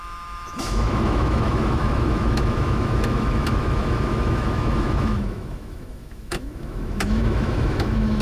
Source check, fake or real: fake